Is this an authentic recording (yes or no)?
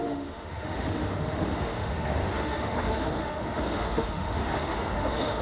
no